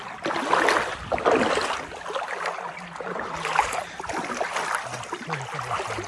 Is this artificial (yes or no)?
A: no